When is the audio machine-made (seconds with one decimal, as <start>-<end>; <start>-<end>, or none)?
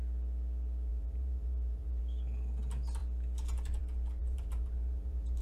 0.9-2.0; 4.2-5.4